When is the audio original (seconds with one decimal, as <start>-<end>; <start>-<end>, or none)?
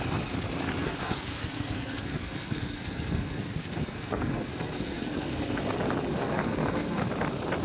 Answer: 0.0-0.8; 5.4-6.1; 7.1-7.6